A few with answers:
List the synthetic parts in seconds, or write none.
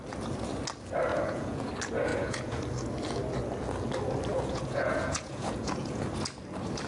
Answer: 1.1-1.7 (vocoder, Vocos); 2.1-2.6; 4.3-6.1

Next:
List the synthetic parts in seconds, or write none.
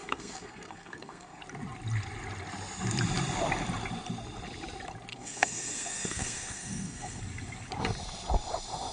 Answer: 0.0-1.4 (codec, SNAC); 5.1-7.2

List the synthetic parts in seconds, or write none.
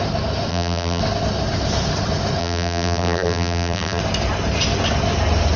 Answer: 0.5-1.0 (vocoder, BigVGAN v2); 2.4-4.0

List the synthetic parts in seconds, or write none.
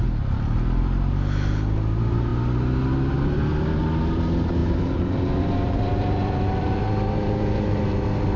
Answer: 4.6-7.8 (vocoder, BigVGAN v2)